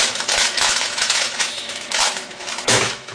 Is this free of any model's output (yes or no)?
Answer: no